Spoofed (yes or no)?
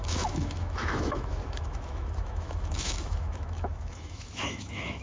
yes